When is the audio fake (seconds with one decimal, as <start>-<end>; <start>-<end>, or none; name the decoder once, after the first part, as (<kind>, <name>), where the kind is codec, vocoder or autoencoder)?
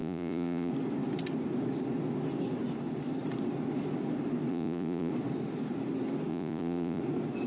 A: 0.0-0.7 (vocoder, Vocos); 4.5-5.1; 6.3-7.0